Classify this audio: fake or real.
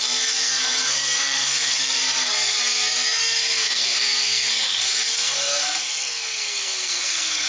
fake